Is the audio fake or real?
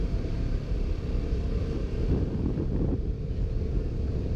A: fake